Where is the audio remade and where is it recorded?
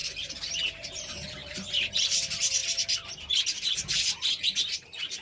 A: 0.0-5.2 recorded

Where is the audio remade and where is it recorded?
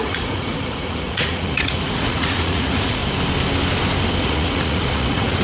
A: 0.0-3.0 remade; 3.0-4.2 recorded; 4.2-5.4 remade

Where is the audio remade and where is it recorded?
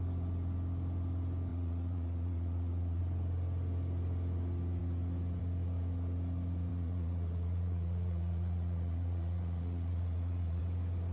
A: 0.0-1.5 recorded; 1.5-3.0 remade; 3.0-6.7 recorded; 6.7-10.6 remade; 10.6-11.1 recorded